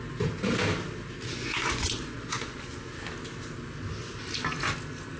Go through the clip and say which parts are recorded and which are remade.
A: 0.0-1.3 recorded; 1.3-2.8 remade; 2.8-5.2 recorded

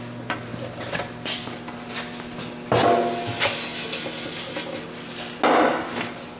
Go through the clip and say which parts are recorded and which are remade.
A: 0.0-6.4 recorded

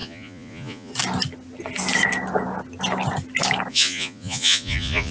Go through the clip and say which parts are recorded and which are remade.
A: 0.0-0.9 remade; 0.9-3.7 recorded; 3.7-5.1 remade

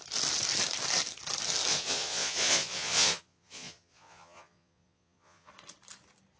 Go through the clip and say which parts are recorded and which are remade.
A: 0.0-1.7 recorded; 1.7-5.5 remade; 5.5-6.4 recorded

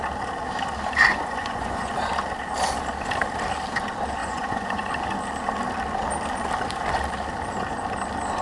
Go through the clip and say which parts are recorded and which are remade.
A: 0.0-1.1 recorded; 1.1-1.9 remade; 1.9-4.2 recorded; 4.2-4.9 remade; 4.9-8.4 recorded

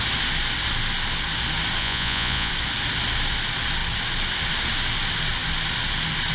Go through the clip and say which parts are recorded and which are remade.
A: 0.0-1.8 recorded; 1.8-2.5 remade; 2.5-6.3 recorded